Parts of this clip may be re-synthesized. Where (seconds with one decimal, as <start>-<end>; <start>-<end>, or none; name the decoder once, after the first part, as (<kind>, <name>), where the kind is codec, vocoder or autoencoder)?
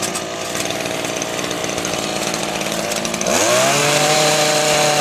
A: 3.8-5.0 (vocoder, BigVGAN v2)